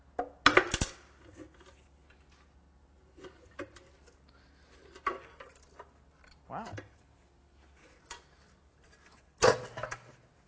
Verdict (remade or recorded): recorded